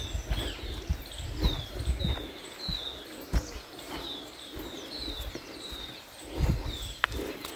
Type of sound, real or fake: real